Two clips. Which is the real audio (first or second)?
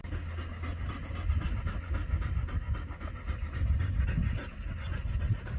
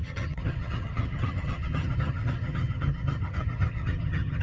first